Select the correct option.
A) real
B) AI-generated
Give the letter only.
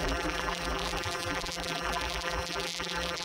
B